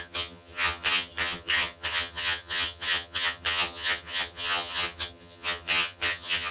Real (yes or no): no